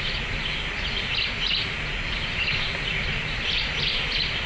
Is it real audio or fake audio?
real